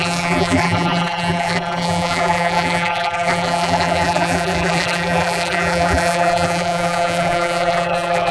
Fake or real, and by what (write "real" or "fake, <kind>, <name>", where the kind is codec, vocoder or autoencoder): fake, vocoder, BigVGAN v2